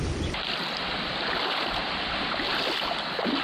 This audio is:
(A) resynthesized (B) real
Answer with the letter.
B